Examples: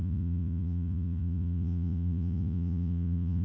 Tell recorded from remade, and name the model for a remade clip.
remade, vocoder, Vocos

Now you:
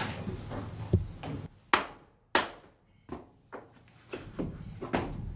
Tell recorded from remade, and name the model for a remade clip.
recorded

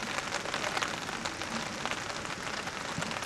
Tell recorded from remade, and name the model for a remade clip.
recorded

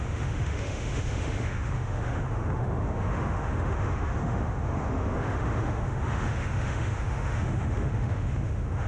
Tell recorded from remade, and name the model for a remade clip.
remade, autoencoder, DAC-VAE